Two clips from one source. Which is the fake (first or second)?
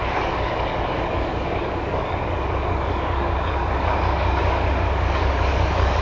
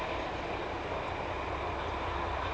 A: first